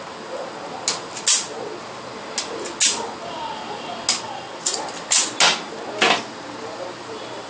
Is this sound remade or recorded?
recorded